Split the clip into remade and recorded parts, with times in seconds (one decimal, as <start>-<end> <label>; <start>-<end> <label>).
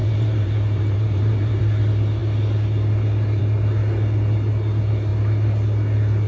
0.0-1.6 remade; 1.6-6.3 recorded